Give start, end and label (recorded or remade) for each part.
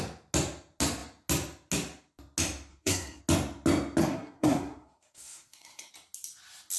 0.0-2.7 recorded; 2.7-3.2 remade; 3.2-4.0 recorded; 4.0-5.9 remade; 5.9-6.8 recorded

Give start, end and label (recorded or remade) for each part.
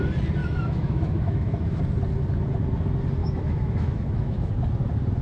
0.0-0.4 recorded; 0.4-1.8 remade; 1.8-3.2 recorded; 3.2-4.5 remade; 4.5-5.2 recorded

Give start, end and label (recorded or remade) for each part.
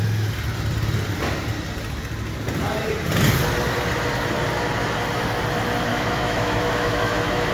0.0-5.9 recorded; 5.9-7.5 remade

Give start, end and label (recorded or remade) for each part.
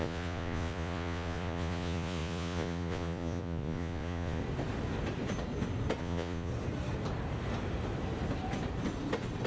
0.0-4.4 remade; 4.4-6.0 recorded; 6.0-6.5 remade; 6.5-9.5 recorded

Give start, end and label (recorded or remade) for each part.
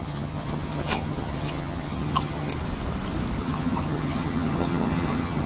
0.0-2.5 remade; 2.5-3.4 recorded; 3.4-5.5 remade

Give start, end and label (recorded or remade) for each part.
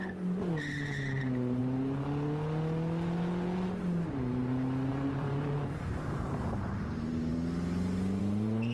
0.0-1.6 remade; 1.6-4.9 recorded; 4.9-7.3 remade; 7.3-8.2 recorded; 8.2-8.7 remade